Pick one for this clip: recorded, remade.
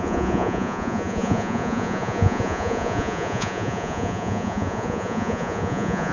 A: remade